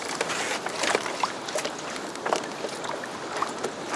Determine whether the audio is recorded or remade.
recorded